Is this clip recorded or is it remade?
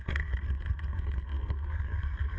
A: remade